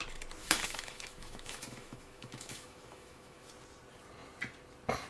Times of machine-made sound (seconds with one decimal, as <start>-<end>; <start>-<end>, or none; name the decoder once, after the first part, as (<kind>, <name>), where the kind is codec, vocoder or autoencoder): 0.4-3.5 (autoencoder, DAC-VAE)